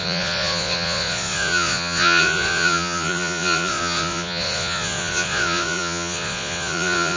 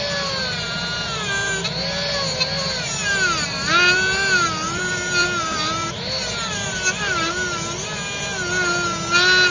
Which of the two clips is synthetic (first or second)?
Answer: first